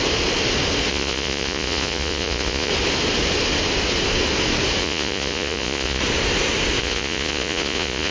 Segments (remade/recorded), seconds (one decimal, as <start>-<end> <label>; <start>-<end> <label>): 0.0-0.9 recorded; 0.9-2.7 remade; 2.7-4.8 recorded; 4.8-6.0 remade; 6.0-6.8 recorded; 6.8-8.1 remade